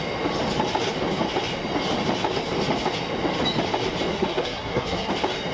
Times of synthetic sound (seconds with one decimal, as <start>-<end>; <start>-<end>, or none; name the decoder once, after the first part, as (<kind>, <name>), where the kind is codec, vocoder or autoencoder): 4.1-5.1 (codec, SNAC)